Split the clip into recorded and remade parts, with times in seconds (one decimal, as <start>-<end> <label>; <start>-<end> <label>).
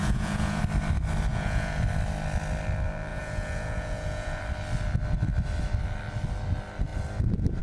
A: 0.0-0.6 remade; 0.6-1.3 recorded; 1.3-1.8 remade; 1.8-3.1 recorded; 3.1-4.4 remade; 4.4-7.6 recorded